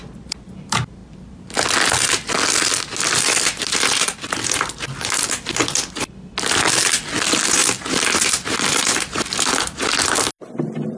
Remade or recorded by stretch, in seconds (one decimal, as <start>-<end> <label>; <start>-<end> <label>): 0.0-11.0 recorded